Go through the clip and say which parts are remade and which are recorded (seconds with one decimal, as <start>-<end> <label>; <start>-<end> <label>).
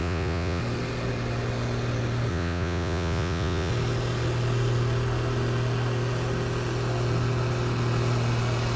0.0-0.6 remade; 0.6-2.3 recorded; 2.3-3.7 remade; 3.7-8.8 recorded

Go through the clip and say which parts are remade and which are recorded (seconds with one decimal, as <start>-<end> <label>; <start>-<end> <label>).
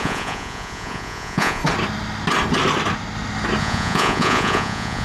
0.0-1.6 remade; 1.6-3.6 recorded; 3.6-5.0 remade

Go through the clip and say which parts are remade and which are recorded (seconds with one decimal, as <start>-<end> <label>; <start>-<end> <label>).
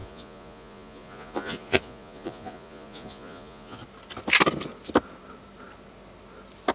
0.0-3.8 remade; 3.8-6.7 recorded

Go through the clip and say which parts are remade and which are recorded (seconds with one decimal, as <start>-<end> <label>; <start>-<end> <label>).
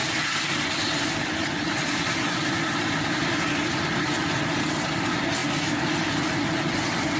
0.0-7.2 recorded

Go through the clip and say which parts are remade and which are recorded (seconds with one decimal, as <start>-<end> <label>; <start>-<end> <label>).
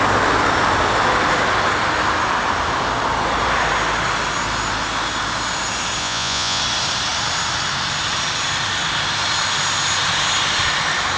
0.0-6.0 recorded; 6.0-6.6 remade; 6.6-11.2 recorded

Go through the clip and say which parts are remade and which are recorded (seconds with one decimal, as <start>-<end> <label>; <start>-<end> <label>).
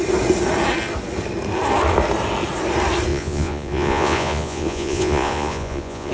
0.0-3.1 recorded; 3.1-6.1 remade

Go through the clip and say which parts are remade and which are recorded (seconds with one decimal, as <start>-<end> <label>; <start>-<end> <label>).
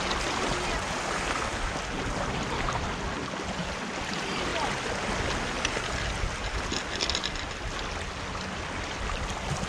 0.0-9.7 recorded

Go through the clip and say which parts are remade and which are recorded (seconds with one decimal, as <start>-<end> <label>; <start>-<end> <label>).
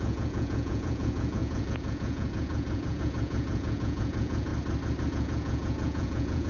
0.0-4.5 remade; 4.5-5.1 recorded; 5.1-6.5 remade